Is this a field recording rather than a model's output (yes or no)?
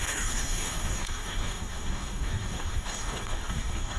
no